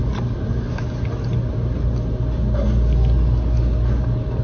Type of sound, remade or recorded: recorded